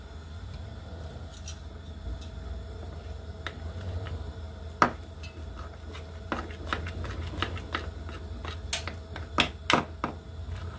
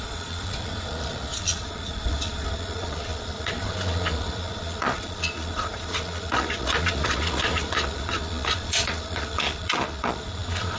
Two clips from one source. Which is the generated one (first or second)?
second